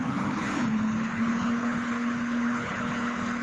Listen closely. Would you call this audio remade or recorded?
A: remade